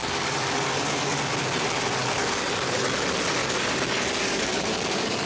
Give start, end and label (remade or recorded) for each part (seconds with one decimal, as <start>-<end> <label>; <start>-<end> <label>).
0.0-1.3 remade; 1.3-2.0 recorded; 2.0-2.9 remade; 2.9-3.4 recorded; 3.4-5.3 remade